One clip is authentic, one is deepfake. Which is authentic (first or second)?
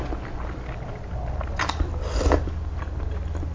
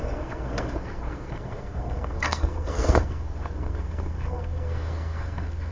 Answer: first